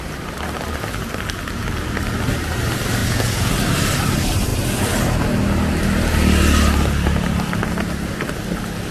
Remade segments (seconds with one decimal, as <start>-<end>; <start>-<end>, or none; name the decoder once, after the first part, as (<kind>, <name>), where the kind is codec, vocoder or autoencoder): 3.0-3.5 (vocoder, Vocos)